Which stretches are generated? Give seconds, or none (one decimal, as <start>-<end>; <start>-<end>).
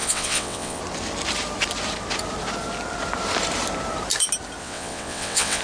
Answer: 0.0-0.8; 4.6-5.6